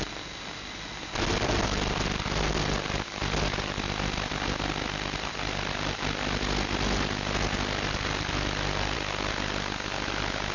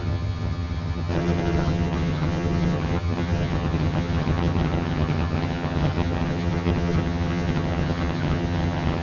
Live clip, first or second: first